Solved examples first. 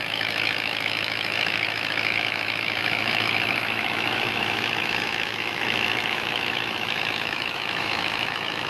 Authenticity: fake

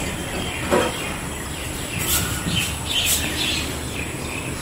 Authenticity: real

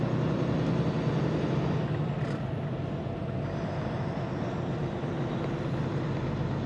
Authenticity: real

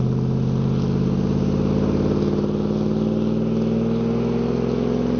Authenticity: real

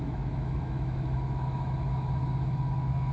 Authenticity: fake